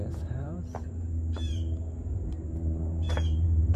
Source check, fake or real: fake